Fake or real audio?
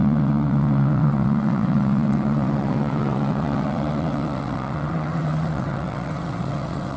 fake